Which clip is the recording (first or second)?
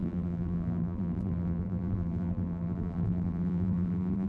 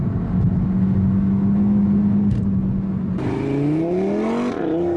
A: second